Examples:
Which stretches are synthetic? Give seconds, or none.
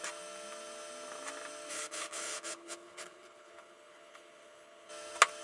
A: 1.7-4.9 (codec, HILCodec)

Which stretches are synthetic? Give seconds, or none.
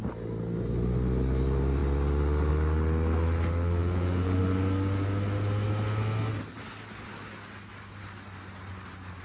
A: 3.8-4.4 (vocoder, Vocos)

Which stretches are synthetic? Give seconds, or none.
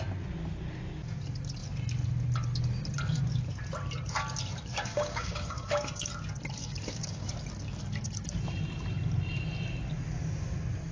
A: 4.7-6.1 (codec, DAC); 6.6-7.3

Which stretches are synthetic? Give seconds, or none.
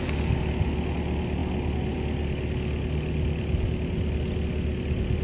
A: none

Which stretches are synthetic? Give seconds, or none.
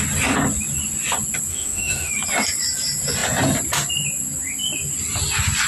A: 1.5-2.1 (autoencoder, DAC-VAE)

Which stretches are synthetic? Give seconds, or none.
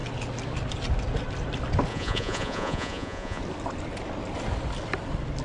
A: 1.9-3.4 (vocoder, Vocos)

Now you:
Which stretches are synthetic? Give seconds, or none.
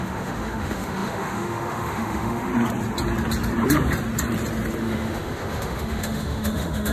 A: 0.0-2.5 (autoencoder, DAC-VAE); 4.8-6.9